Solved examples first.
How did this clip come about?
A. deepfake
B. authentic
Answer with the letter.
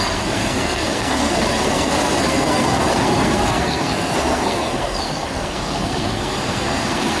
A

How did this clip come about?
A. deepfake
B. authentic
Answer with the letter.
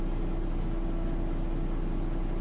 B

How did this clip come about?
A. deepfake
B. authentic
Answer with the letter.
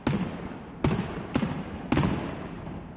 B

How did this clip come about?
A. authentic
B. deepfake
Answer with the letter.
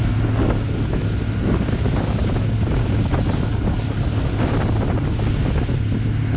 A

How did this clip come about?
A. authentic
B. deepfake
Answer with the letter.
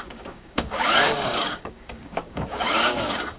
B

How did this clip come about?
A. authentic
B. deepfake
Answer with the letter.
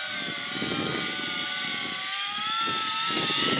A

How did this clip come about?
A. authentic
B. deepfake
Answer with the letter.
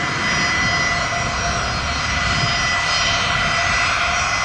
A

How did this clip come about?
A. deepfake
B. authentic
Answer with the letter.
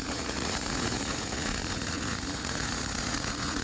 A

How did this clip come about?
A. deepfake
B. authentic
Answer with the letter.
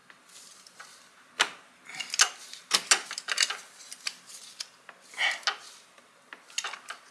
B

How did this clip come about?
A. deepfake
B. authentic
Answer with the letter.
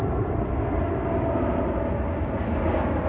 B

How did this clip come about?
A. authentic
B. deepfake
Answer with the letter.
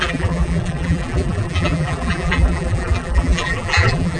B